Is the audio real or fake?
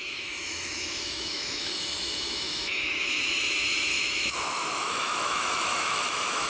fake